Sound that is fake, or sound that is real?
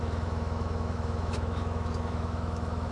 fake